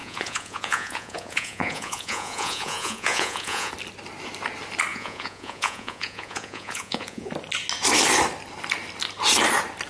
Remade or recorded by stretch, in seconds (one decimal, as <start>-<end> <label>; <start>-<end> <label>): 0.0-3.7 remade; 3.7-4.9 recorded; 4.9-7.3 remade; 7.3-9.9 recorded